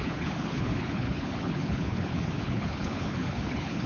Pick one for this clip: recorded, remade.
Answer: remade